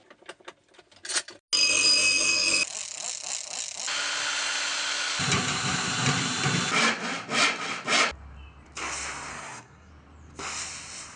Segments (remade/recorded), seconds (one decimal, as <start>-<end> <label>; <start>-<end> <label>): 0.0-9.3 recorded; 9.3-9.9 remade; 9.9-11.2 recorded